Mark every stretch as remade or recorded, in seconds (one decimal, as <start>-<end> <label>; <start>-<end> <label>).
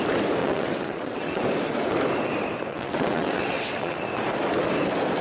0.0-0.4 recorded; 0.4-1.4 remade; 1.4-2.7 recorded; 2.7-4.0 remade; 4.0-5.2 recorded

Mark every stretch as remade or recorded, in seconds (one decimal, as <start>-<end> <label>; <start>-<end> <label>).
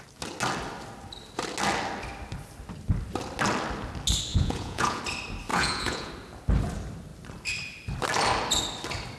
0.0-4.3 recorded; 4.3-5.0 remade; 5.0-5.5 recorded; 5.5-6.1 remade; 6.1-9.2 recorded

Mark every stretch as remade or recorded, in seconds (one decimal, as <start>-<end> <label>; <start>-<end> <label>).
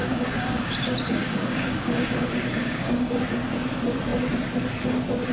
0.0-3.2 remade; 3.2-5.3 recorded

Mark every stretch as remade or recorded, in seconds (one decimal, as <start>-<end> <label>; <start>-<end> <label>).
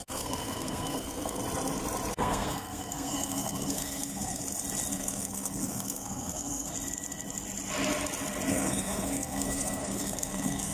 0.0-1.4 remade; 1.4-2.1 recorded; 2.1-4.4 remade; 4.4-4.9 recorded; 4.9-6.7 remade; 6.7-8.5 recorded; 8.5-10.7 remade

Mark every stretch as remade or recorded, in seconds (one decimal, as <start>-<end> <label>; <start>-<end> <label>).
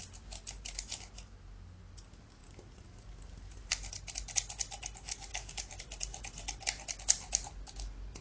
0.0-5.3 recorded; 5.3-5.8 remade; 5.8-8.2 recorded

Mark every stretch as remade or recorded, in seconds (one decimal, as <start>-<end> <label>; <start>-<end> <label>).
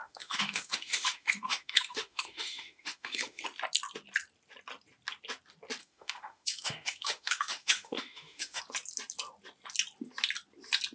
0.0-3.4 remade; 3.4-5.8 recorded; 5.8-8.6 remade; 8.6-10.9 recorded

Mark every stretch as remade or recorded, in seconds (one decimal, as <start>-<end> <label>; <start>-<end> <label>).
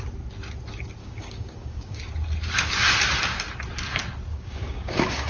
0.0-1.0 recorded; 1.0-2.0 remade; 2.0-4.3 recorded; 4.3-5.3 remade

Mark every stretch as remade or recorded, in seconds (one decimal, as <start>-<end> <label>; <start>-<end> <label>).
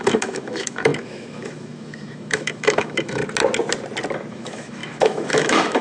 0.0-3.2 remade; 3.2-4.3 recorded; 4.3-5.8 remade